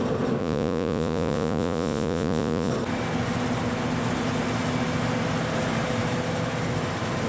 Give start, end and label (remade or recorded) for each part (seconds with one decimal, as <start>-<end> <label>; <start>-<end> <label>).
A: 0.0-0.4 recorded; 0.4-2.7 remade; 2.7-7.3 recorded